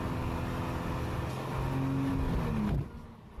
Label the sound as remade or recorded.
recorded